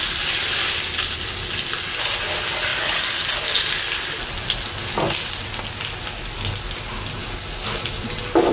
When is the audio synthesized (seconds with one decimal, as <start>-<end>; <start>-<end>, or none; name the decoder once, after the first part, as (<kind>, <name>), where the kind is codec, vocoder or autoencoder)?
none